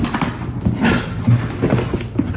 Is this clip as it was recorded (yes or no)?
yes